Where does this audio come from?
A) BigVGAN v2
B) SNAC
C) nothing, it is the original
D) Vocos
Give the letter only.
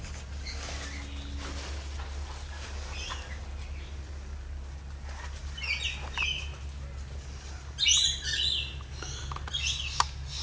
C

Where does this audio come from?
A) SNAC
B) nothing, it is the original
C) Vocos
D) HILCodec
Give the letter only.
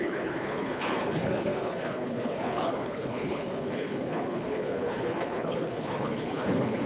D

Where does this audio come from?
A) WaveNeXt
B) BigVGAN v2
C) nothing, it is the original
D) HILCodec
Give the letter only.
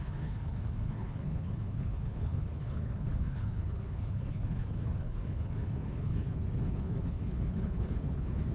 D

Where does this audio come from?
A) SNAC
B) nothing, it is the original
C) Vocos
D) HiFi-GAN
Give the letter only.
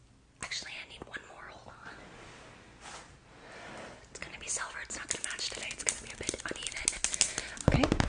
B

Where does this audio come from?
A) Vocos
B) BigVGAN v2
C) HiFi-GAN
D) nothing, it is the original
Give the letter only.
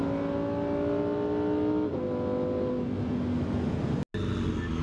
D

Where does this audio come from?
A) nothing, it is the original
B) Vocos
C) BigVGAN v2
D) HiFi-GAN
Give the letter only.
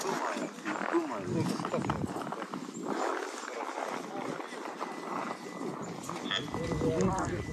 A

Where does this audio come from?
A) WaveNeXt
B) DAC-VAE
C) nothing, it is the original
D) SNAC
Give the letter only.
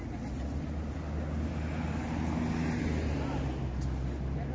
C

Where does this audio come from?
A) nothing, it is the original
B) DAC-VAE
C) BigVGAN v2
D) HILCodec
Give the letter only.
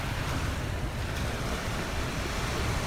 C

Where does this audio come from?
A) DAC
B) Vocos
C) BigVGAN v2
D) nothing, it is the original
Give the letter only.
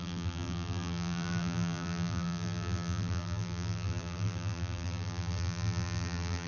C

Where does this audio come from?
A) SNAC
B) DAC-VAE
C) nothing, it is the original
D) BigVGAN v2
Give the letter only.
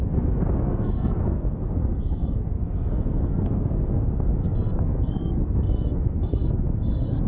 A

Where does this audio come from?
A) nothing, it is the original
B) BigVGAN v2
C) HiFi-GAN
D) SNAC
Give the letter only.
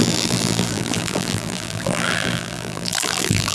B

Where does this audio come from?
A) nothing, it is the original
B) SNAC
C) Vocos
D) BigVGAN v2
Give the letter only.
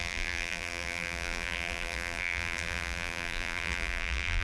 D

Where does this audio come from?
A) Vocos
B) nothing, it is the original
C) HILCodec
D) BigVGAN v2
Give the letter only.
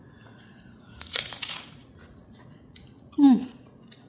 A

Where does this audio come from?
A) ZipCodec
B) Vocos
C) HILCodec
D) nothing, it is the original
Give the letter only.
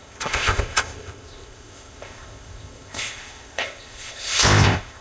A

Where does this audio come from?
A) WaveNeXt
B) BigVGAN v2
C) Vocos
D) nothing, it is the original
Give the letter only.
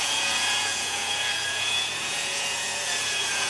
C